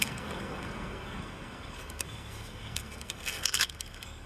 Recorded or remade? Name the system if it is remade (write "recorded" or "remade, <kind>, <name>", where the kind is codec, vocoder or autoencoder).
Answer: remade, codec, SNAC